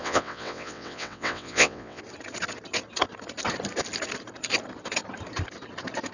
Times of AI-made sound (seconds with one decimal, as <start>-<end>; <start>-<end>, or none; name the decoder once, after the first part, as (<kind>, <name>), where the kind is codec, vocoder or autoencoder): 0.0-2.0 (vocoder, WaveNeXt)